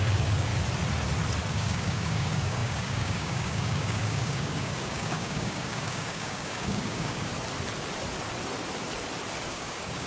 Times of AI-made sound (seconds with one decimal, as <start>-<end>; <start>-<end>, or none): 0.0-0.5; 1.5-7.3; 9.5-10.1